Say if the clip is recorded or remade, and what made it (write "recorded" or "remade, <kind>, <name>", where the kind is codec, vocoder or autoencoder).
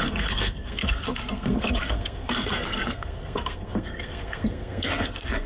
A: remade, codec, SNAC